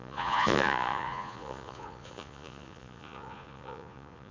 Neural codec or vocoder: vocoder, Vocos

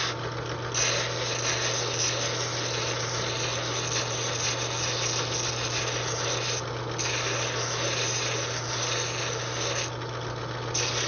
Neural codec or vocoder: none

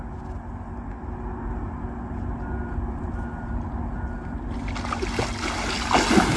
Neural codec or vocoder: none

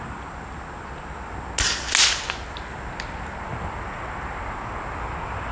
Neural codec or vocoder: none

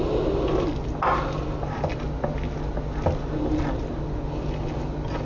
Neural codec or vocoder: none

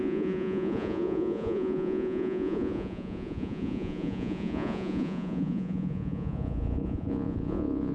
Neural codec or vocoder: vocoder, Vocos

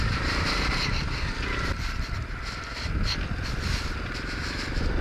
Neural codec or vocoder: none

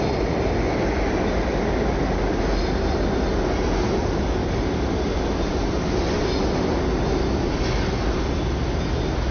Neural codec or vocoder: none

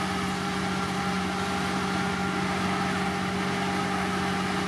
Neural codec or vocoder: none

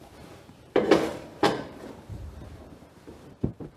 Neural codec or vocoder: vocoder, BigVGAN v2